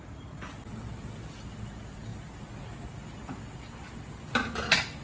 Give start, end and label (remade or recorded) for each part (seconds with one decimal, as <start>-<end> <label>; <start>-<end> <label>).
0.0-5.0 recorded